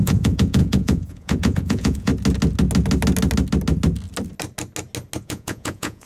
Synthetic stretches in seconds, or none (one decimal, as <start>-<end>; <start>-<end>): 0.0-2.1; 5.2-6.1